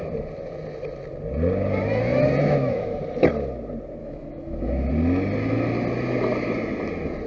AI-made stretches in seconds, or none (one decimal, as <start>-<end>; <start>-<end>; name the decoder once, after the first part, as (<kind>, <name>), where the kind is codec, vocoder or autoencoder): 2.4-3.0 (autoencoder, DAC-VAE); 4.0-4.9